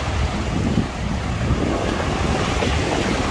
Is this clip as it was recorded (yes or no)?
yes